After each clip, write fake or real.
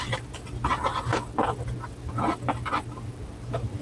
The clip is real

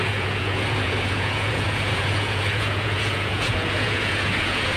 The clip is fake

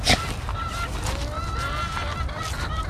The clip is real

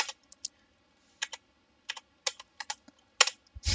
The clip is real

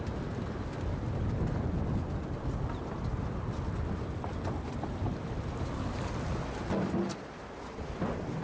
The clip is real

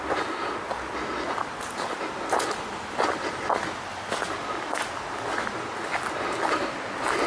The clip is real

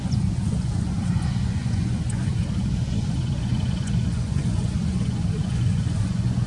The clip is fake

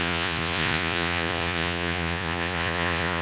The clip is fake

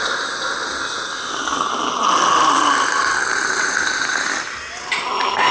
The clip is real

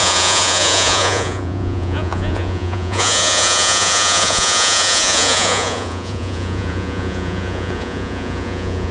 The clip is fake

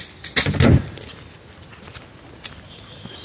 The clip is real